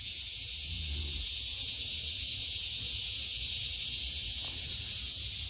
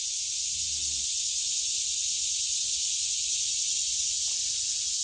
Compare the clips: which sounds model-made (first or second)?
first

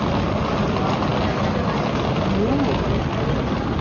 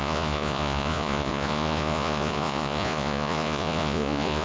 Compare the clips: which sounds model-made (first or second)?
second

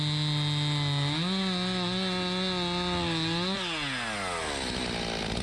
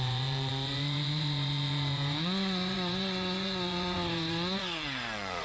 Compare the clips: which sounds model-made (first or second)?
second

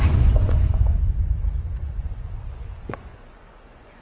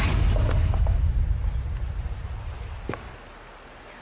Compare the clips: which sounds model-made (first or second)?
first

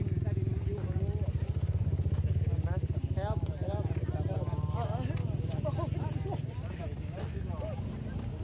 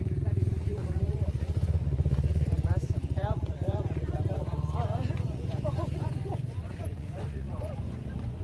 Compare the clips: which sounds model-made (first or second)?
second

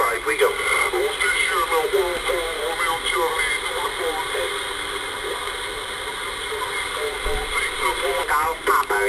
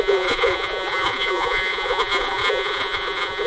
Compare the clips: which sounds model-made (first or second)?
second